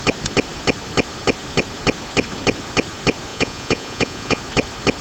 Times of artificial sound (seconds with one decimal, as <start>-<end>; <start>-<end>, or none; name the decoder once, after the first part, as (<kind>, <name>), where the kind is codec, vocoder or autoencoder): 3.3-4.4 (vocoder, Vocos)